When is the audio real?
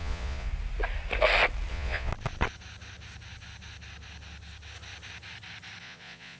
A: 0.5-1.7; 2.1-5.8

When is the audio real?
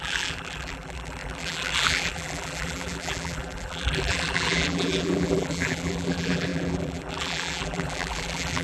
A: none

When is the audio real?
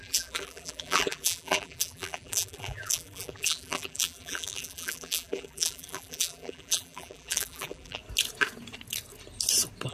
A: 8.0-9.9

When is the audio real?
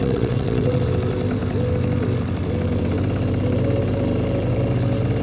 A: 0.8-5.2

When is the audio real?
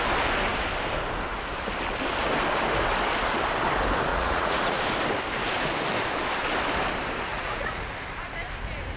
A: 0.0-4.1; 4.8-7.3; 7.9-9.0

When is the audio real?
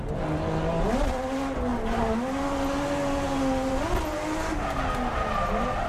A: 0.0-5.9